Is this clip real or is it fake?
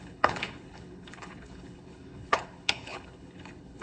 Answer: fake